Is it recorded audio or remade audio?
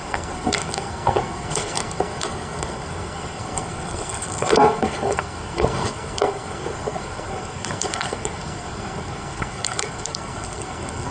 remade